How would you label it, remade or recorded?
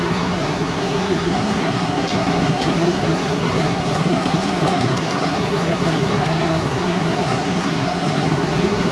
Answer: remade